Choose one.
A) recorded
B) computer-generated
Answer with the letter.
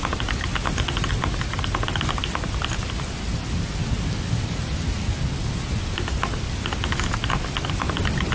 A